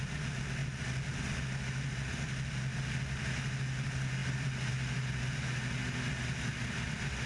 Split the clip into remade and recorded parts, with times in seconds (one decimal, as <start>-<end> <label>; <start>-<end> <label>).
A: 0.0-7.3 recorded